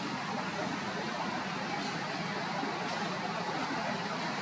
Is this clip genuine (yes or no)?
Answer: yes